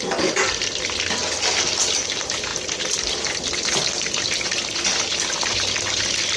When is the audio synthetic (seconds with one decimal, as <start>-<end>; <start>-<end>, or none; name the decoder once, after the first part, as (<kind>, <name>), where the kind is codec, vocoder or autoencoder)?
none